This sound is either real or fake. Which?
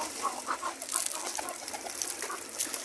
real